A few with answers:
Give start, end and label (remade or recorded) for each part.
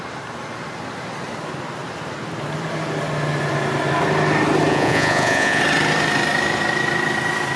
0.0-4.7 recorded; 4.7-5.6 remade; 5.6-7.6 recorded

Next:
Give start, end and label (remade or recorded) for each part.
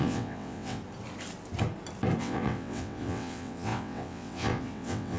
0.0-0.8 remade; 0.8-2.2 recorded; 2.2-5.2 remade